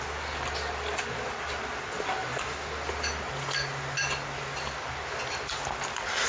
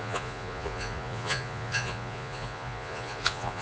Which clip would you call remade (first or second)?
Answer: second